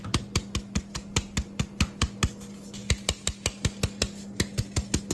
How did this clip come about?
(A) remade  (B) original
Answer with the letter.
B